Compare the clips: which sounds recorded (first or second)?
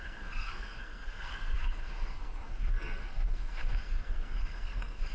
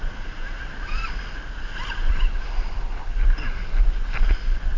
second